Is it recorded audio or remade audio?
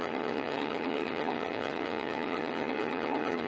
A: remade